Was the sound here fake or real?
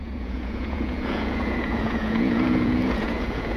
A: fake